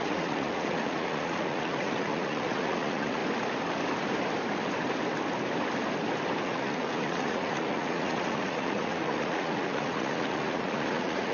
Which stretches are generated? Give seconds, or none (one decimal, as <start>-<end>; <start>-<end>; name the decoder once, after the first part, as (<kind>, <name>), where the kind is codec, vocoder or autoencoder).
0.0-3.2 (vocoder, Vocos); 6.4-11.3